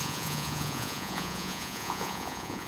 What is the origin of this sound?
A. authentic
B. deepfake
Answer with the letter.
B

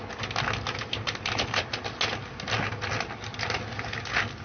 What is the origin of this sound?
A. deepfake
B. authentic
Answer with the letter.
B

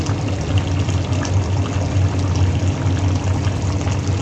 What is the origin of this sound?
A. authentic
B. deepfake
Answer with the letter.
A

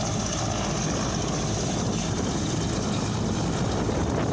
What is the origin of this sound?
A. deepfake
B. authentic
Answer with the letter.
B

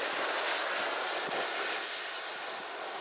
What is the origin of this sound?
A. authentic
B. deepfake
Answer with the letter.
A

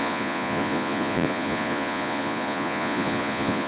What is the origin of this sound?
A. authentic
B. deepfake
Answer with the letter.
B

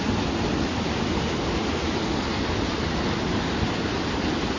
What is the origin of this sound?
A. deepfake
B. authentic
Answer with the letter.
B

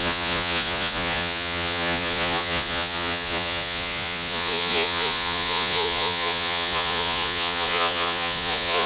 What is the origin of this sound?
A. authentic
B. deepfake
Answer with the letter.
B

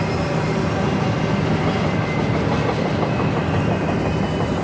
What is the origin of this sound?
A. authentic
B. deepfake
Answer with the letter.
A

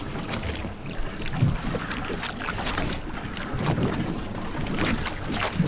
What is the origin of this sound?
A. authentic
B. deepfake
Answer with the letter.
A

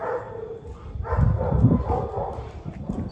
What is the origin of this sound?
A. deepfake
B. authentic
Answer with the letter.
B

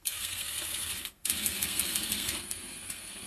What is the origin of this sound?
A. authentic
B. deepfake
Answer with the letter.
B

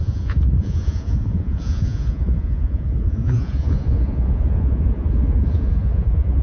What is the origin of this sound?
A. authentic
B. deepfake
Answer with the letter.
B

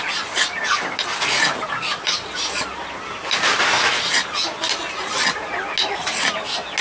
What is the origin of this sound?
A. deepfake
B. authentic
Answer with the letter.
B